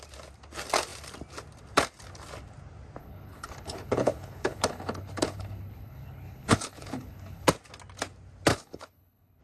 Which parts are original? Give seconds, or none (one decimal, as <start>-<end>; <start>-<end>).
0.0-3.0; 7.5-8.5